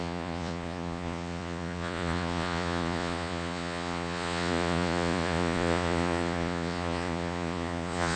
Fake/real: fake